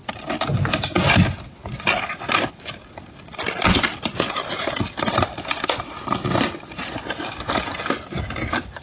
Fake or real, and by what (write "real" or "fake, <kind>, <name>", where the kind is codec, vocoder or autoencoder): real